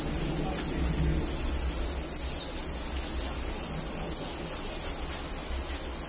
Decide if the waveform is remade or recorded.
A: recorded